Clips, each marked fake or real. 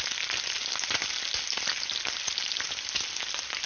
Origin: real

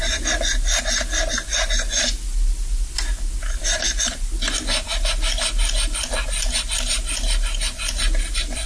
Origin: real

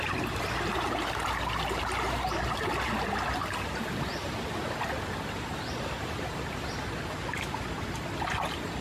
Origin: real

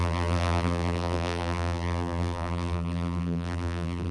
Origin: fake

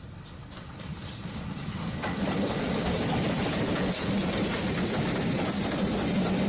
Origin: fake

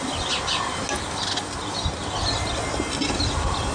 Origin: real